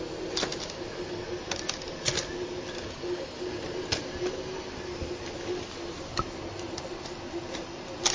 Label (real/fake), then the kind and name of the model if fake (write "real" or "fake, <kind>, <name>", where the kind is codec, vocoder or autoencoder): real